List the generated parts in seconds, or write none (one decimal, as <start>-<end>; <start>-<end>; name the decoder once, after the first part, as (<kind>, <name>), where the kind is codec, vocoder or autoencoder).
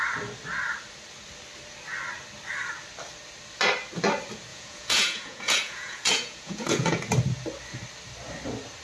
4.5-7.0 (vocoder, Vocos)